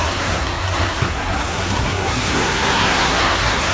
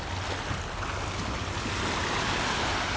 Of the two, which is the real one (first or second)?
second